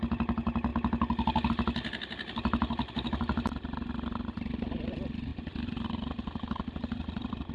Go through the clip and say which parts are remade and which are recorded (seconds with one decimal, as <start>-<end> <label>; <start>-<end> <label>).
0.0-7.5 recorded